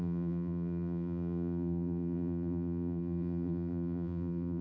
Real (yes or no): no